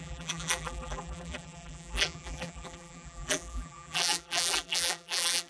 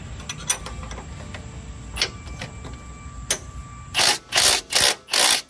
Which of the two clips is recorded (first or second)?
second